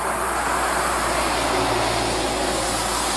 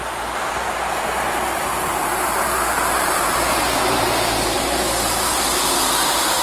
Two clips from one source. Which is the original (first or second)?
first